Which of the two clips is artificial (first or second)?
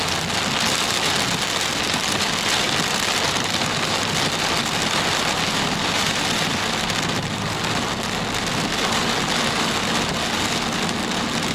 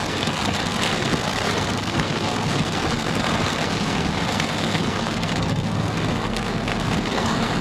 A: second